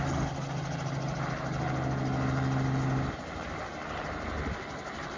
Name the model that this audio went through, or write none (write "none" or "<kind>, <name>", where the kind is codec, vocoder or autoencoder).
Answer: none